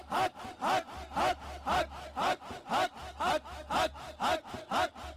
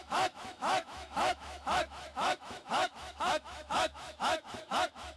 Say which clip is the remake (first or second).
second